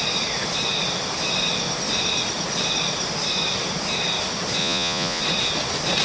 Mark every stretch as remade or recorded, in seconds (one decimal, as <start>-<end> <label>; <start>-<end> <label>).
0.0-4.6 recorded; 4.6-5.2 remade; 5.2-6.0 recorded